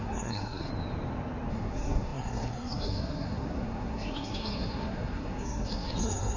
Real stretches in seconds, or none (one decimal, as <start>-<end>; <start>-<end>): 0.7-1.5